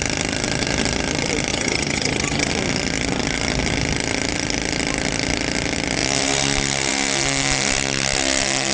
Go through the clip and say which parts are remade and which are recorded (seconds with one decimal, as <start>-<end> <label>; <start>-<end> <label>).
0.0-1.5 recorded; 1.5-2.5 remade; 2.5-8.7 recorded